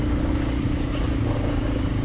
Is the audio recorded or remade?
remade